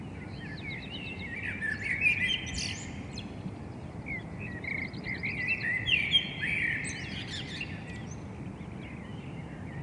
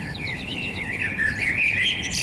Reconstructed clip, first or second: second